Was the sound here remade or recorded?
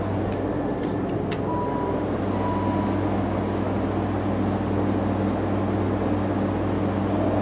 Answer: recorded